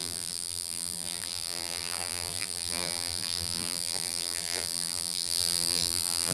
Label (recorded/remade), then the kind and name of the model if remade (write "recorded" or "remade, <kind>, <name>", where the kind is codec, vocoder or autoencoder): remade, vocoder, BigVGAN v2